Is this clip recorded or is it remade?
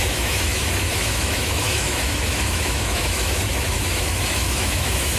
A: remade